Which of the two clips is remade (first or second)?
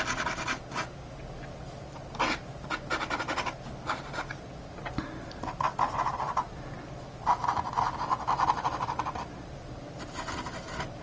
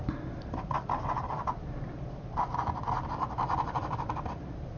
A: second